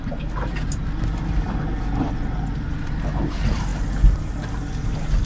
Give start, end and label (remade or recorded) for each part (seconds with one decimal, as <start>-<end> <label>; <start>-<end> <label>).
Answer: 0.0-5.3 recorded